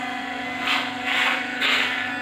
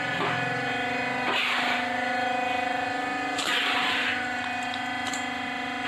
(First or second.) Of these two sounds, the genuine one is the second